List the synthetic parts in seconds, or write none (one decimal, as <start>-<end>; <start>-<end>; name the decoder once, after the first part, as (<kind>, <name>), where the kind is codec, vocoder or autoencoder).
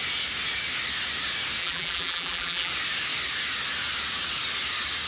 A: 1.6-2.7 (vocoder, BigVGAN v2)